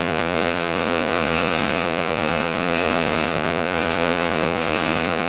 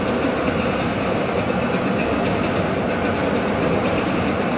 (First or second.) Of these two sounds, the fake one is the first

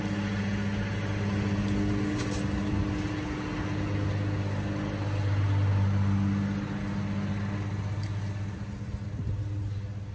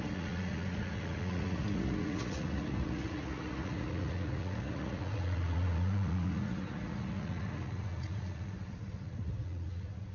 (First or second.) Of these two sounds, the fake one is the second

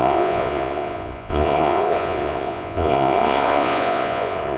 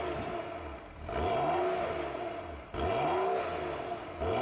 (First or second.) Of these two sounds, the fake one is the first